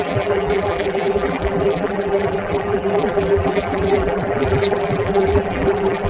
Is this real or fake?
fake